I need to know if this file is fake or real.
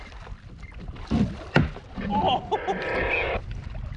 real